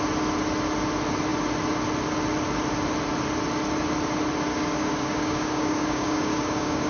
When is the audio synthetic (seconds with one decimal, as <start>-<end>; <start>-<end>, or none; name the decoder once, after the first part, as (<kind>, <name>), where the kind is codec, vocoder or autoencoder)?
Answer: 4.5-6.9 (codec, DAC)